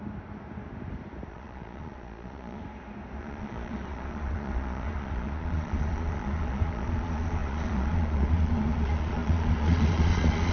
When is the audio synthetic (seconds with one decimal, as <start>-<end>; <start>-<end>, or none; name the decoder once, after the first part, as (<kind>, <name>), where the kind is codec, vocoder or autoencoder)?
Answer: 1.3-2.6 (vocoder, Vocos); 3.2-10.5